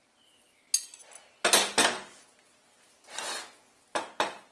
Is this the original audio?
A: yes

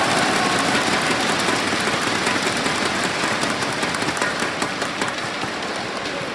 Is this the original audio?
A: yes